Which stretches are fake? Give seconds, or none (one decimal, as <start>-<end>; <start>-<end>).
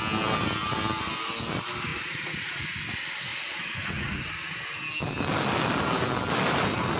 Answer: 1.9-2.8; 3.3-4.5